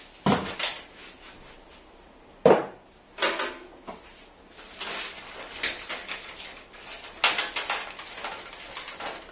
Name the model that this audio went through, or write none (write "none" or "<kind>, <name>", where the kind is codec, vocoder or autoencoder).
none